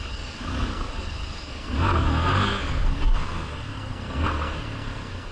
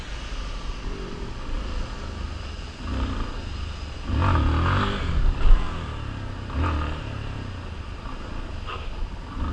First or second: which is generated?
first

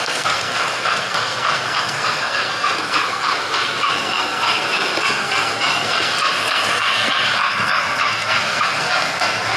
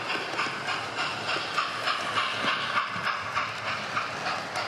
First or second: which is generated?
first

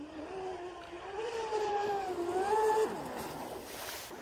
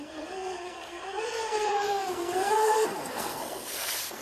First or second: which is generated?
second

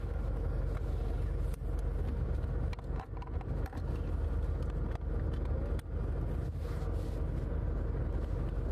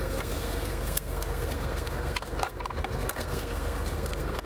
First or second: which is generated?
second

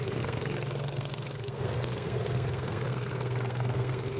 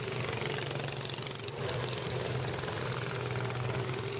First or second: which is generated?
first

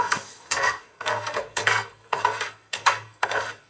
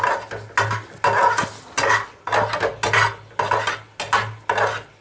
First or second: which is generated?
first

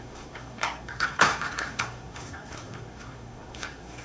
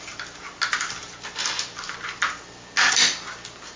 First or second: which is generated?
first